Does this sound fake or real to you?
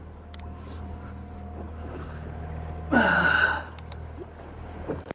real